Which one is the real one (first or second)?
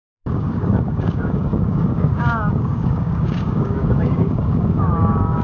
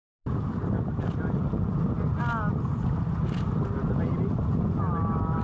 second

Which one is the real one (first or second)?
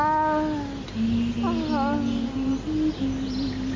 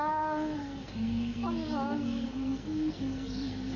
first